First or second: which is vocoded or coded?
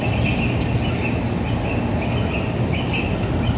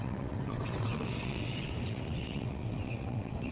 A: second